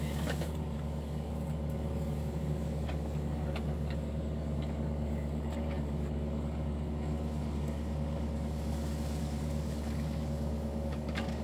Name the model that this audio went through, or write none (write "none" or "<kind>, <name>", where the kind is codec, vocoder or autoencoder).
codec, DAC